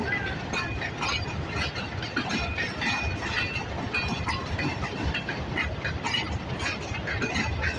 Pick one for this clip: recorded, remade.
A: recorded